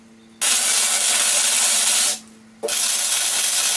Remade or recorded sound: recorded